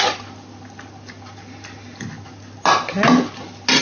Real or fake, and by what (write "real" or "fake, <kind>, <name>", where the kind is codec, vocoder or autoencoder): real